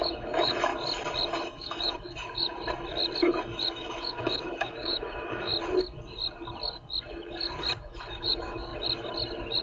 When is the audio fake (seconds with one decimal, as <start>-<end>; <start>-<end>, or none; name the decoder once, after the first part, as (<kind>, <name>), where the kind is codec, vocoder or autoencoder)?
0.0-0.7 (autoencoder, DAC-VAE); 1.4-2.5; 3.2-5.5; 7.8-8.7